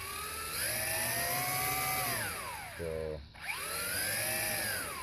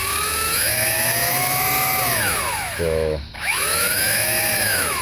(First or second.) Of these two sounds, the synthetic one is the second